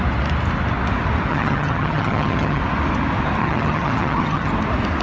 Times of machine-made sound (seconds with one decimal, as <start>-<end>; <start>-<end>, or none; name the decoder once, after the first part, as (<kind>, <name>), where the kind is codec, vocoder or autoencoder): 1.3-2.6 (vocoder, HiFi-GAN); 3.4-4.5